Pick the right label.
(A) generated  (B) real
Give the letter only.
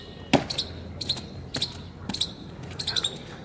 B